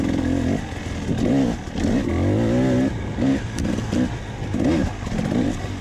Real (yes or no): yes